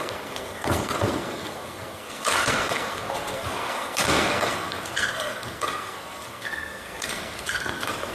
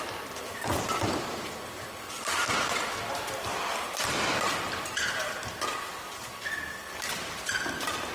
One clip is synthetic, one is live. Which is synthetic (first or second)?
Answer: first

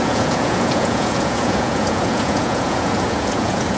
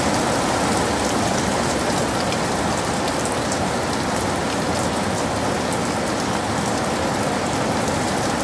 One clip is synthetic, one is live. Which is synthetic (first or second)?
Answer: first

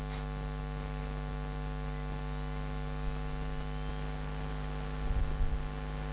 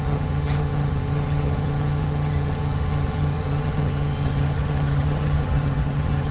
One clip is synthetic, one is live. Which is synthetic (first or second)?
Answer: second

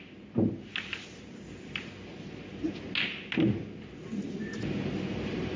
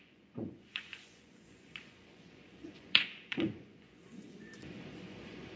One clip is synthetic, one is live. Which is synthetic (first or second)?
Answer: second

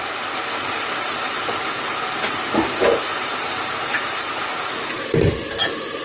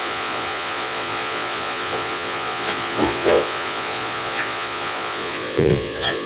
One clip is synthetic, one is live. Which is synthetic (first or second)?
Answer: second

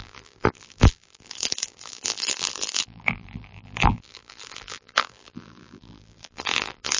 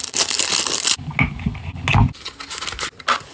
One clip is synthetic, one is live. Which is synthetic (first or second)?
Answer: first